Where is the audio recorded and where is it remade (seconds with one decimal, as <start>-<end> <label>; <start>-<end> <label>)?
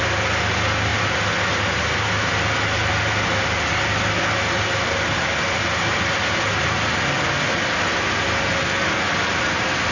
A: 0.0-9.9 recorded